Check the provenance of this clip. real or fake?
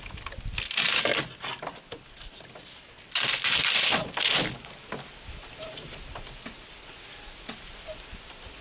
real